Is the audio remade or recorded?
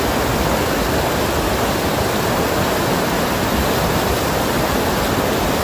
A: recorded